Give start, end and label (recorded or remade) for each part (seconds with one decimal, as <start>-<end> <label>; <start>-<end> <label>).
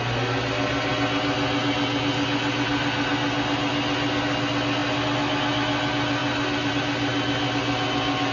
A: 0.0-8.3 recorded